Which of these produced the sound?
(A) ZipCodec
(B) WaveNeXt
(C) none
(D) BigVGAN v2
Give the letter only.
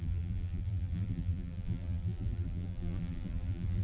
D